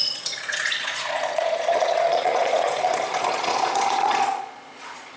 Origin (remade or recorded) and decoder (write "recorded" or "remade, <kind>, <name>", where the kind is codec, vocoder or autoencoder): remade, vocoder, Vocos